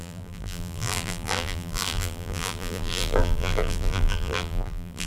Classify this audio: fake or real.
fake